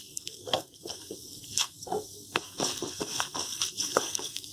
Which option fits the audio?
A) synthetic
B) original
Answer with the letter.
A